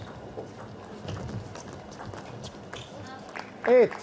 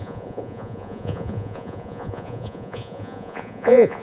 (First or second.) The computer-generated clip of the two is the second